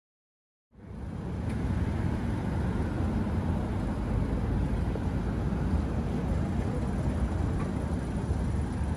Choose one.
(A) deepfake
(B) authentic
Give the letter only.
B